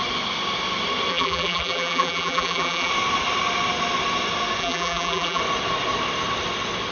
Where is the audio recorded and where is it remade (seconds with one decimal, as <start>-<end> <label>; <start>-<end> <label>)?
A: 0.0-1.1 recorded; 1.1-2.9 remade; 2.9-4.6 recorded; 4.6-5.4 remade; 5.4-6.9 recorded

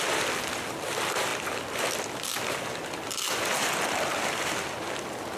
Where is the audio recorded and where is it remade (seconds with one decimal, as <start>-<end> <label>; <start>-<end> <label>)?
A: 0.0-5.4 recorded

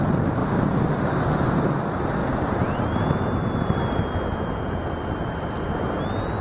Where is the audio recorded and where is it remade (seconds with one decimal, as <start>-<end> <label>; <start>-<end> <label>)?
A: 0.0-0.4 recorded; 0.4-1.7 remade; 1.7-2.2 recorded; 2.2-6.0 remade; 6.0-6.4 recorded